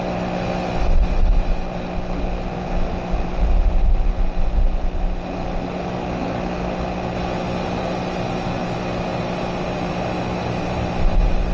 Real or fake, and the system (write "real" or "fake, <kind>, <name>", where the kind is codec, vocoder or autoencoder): real